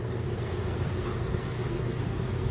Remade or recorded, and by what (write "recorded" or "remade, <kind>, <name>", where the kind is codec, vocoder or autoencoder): remade, codec, SNAC